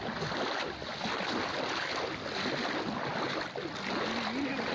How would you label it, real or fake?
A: real